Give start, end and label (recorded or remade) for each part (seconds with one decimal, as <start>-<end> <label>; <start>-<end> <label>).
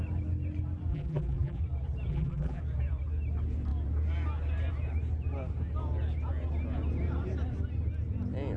0.0-0.9 recorded; 0.9-1.6 remade; 1.6-2.1 recorded; 2.1-2.6 remade; 2.6-8.6 recorded